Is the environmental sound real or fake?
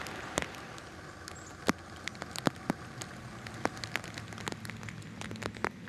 real